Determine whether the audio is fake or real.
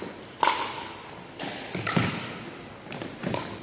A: real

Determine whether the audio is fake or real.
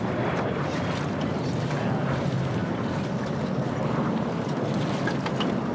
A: real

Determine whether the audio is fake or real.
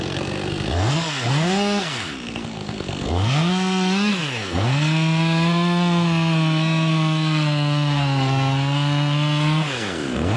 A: fake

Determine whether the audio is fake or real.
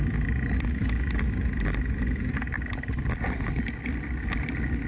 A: real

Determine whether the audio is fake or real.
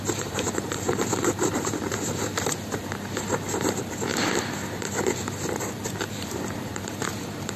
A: fake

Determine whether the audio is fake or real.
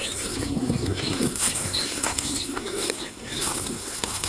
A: fake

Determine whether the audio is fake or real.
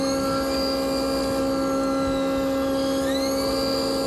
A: real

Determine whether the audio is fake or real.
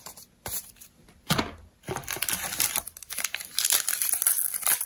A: real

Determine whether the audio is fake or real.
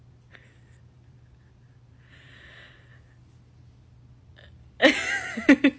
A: real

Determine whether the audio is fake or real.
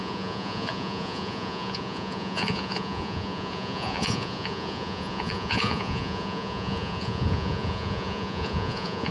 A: fake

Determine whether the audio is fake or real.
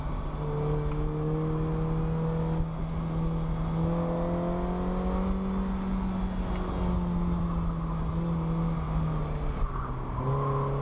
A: real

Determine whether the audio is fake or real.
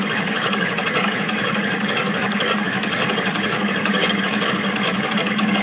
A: fake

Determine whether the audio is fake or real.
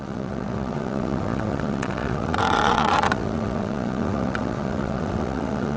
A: fake